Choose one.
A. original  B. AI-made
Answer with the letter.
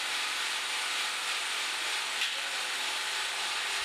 A